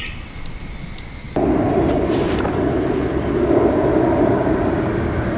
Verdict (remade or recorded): recorded